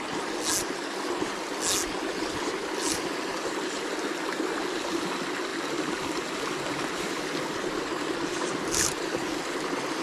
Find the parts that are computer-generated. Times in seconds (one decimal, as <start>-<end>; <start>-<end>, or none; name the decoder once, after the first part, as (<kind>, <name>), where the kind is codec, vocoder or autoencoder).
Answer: 2.1-4.1 (vocoder, BigVGAN v2); 5.5-10.0